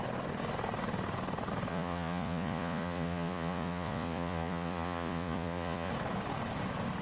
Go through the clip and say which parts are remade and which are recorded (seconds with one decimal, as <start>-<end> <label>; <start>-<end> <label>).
0.0-1.7 recorded; 1.7-5.9 remade; 5.9-7.0 recorded